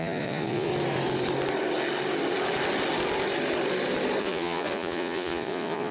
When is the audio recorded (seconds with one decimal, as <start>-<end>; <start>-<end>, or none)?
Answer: 0.7-4.2